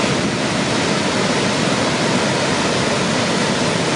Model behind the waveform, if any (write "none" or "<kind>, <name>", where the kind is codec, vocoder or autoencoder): none